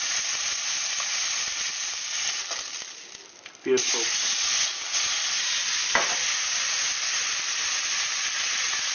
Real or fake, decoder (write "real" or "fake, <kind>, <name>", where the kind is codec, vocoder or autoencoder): real